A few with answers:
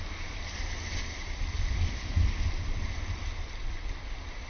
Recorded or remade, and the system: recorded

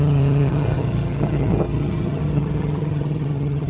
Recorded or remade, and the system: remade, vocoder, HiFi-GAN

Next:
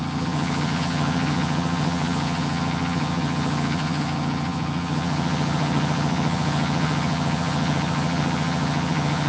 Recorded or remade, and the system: remade, vocoder, HiFi-GAN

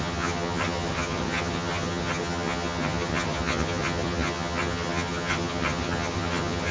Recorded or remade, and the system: remade, vocoder, HiFi-GAN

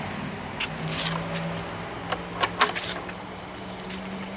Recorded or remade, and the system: recorded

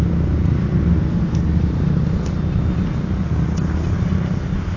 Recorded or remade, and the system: recorded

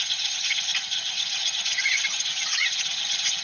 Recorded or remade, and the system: remade, vocoder, HiFi-GAN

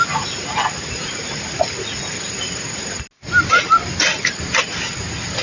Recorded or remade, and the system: recorded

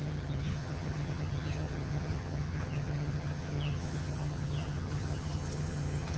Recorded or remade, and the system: remade, vocoder, HiFi-GAN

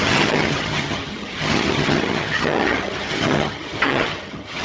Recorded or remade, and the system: remade, vocoder, HiFi-GAN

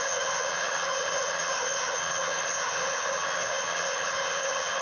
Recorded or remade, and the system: remade, vocoder, HiFi-GAN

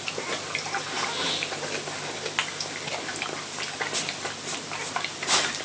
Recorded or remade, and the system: recorded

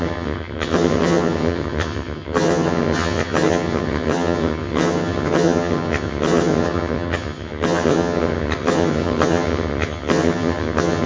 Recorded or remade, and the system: remade, vocoder, HiFi-GAN